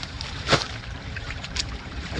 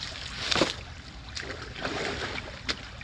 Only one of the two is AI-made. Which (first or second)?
first